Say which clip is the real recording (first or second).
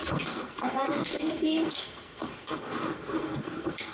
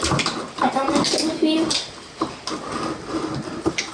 second